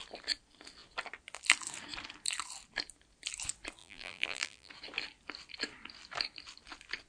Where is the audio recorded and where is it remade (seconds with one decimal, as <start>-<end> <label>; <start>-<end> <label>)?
0.0-3.8 recorded; 3.8-4.7 remade; 4.7-7.1 recorded